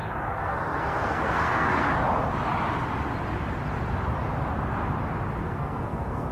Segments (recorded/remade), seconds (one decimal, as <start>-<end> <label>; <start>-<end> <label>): 0.0-1.9 remade; 1.9-5.4 recorded; 5.4-6.3 remade